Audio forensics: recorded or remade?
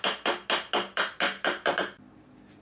recorded